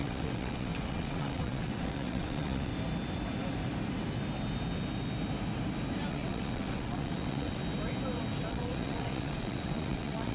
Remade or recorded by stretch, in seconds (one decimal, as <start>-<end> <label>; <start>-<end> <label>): 0.0-2.7 remade; 2.7-6.1 recorded; 6.1-7.6 remade; 7.6-8.5 recorded; 8.5-10.3 remade